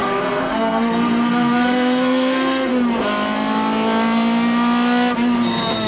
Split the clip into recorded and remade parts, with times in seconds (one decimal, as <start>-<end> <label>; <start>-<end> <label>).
0.0-2.7 remade; 2.7-5.9 recorded